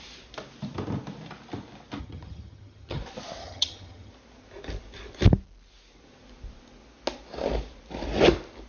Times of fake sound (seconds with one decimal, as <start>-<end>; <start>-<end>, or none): 2.0-3.0; 3.4-4.1